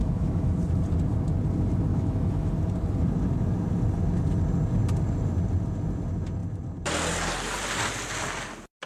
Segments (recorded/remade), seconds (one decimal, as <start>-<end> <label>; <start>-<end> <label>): 0.0-0.5 remade; 0.5-1.9 recorded; 1.9-2.5 remade; 2.5-8.9 recorded